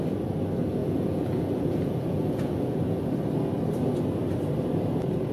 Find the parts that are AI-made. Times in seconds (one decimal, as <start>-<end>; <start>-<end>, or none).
0.8-3.1